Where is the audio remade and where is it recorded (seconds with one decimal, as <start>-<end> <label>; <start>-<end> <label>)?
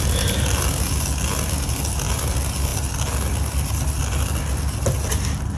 0.0-5.6 recorded